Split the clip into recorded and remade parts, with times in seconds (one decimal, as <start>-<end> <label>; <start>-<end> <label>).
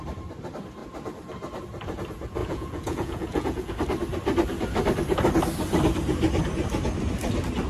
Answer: 0.0-2.4 recorded; 2.4-3.7 remade; 3.7-7.7 recorded